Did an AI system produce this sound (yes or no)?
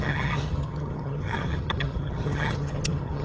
yes